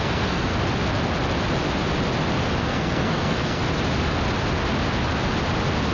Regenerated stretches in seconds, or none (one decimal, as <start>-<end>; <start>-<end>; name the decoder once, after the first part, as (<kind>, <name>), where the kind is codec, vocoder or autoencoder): 0.0-0.5 (codec, SNAC); 2.6-3.6